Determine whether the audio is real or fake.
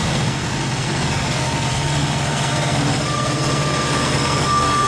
fake